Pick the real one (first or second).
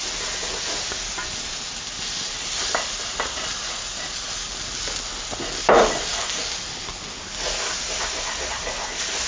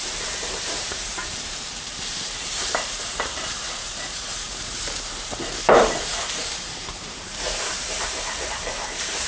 first